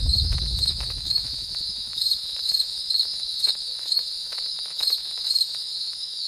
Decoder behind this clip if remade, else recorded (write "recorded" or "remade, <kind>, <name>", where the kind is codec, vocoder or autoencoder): remade, autoencoder, DAC-VAE